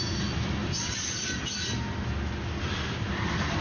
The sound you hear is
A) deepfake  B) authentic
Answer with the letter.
B